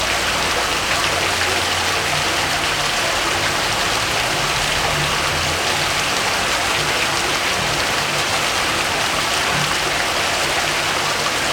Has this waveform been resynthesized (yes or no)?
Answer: no